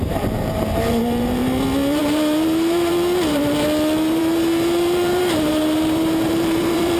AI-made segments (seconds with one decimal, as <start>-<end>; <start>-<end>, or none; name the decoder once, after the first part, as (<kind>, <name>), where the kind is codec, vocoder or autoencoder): 0.0-1.4 (vocoder, BigVGAN v2); 2.0-2.9; 4.1-7.0